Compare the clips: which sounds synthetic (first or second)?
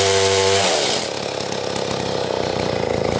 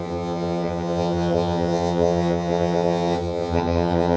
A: second